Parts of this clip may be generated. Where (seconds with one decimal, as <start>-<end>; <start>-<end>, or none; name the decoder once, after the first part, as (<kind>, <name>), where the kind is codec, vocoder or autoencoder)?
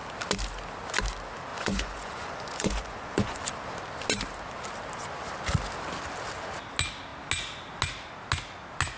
1.5-3.4 (vocoder, Vocos)